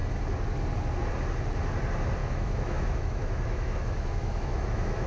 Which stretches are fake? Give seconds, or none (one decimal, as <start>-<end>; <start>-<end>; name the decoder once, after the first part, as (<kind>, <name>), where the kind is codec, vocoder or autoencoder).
2.2-5.1 (autoencoder, DAC-VAE)

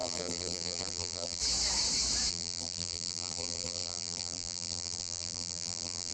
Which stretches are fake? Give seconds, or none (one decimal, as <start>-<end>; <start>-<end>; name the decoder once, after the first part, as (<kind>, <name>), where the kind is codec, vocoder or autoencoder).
0.0-1.4 (vocoder, BigVGAN v2); 2.3-6.1